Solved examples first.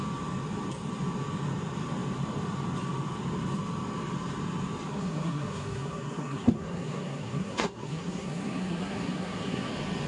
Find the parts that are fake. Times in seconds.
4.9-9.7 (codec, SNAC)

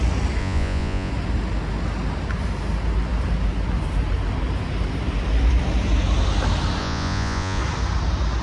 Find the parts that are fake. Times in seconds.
0.4-1.1 (vocoder, Vocos); 6.8-7.6

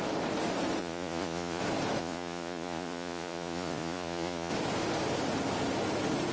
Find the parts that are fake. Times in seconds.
0.8-1.6 (vocoder, Vocos); 2.0-4.5

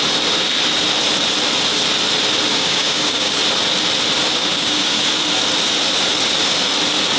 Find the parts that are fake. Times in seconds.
2.5-3.4 (codec, DAC); 4.3-5.0

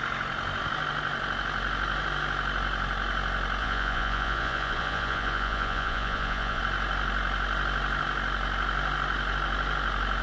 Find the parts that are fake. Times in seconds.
3.6-6.6 (vocoder, Vocos)

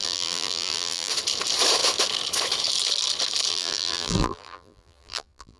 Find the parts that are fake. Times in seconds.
0.0-1.1 (vocoder, BigVGAN v2); 3.5-5.6